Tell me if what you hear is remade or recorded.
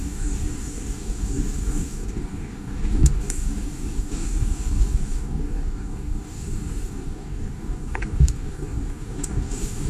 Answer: remade